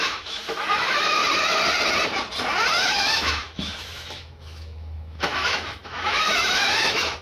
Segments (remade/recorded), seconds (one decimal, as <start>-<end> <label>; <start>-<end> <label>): 0.0-1.2 remade; 1.2-2.7 recorded; 2.7-7.2 remade